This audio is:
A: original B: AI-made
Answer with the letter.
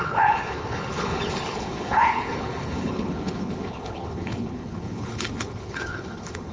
B